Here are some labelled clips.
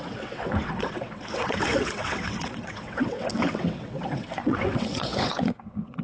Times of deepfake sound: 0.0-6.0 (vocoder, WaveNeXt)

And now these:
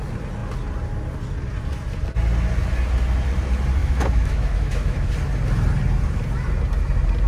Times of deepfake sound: 3.8-5.1 (autoencoder, DAC-VAE)

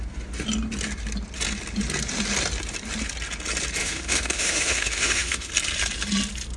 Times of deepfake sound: 3.8-5.5 (autoencoder, DAC-VAE)

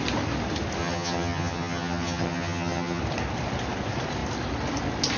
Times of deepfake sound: 0.8-3.0 (vocoder, HiFi-GAN)